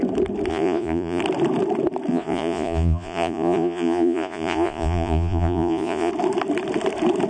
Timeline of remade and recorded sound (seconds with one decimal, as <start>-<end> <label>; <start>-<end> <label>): 0.0-0.5 recorded; 0.5-1.2 remade; 1.2-2.1 recorded; 2.1-6.1 remade; 6.1-7.3 recorded